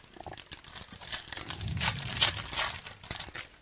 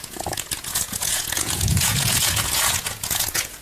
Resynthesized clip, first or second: second